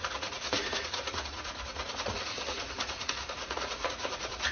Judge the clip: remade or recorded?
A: remade